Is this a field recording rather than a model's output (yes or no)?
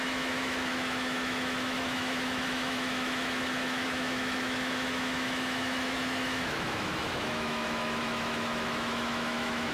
no